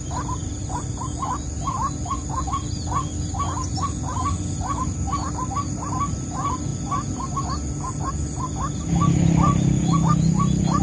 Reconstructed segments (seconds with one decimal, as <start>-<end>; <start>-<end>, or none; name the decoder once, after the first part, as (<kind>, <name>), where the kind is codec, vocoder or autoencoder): none